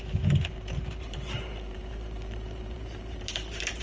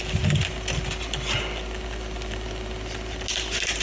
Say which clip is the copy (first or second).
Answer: first